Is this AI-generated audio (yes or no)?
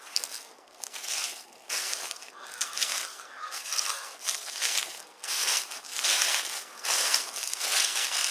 yes